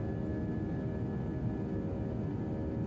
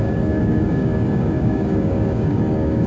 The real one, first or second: first